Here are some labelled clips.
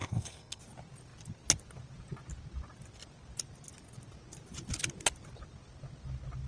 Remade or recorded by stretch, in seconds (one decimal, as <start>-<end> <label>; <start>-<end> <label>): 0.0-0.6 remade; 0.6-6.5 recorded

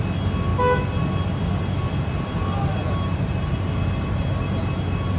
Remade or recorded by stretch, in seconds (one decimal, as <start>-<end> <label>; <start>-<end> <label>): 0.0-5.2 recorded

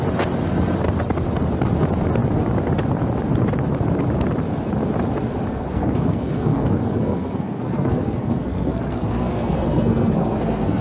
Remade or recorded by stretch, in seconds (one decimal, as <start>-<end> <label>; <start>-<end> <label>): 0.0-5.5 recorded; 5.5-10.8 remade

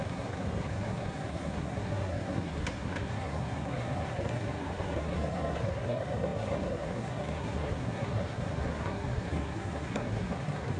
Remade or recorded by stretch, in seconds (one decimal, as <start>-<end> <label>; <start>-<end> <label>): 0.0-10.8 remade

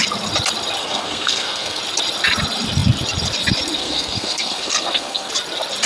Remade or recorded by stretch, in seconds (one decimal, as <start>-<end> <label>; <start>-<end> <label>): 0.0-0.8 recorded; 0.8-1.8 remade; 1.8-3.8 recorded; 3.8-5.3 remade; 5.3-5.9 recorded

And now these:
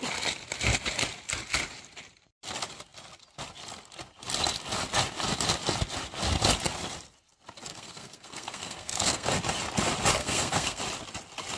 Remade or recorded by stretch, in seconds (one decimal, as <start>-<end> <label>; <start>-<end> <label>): 0.0-7.7 recorded; 7.7-9.3 remade; 9.3-10.2 recorded; 10.2-10.8 remade; 10.8-11.6 recorded